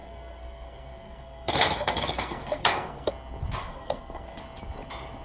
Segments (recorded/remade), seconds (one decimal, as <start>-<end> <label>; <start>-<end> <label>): 0.0-3.1 remade; 3.1-3.6 recorded; 3.6-4.4 remade; 4.4-5.2 recorded